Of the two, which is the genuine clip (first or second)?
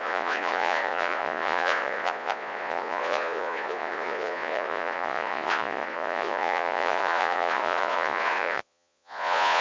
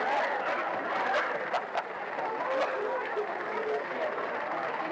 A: second